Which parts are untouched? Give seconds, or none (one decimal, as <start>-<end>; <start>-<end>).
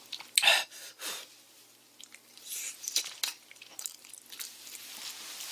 0.0-5.5